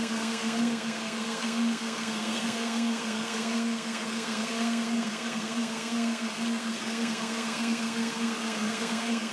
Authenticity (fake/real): fake